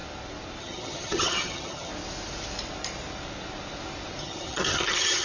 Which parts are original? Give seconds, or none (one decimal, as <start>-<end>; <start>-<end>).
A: 0.0-0.6; 1.9-4.2